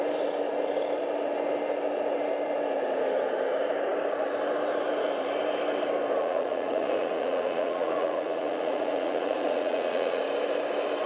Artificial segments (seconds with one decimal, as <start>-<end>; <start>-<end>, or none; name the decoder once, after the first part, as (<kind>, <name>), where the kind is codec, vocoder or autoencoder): 6.2-10.2 (vocoder, Vocos)